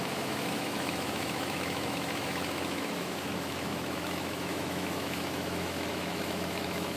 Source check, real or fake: fake